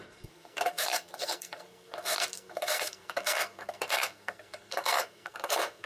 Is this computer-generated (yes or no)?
yes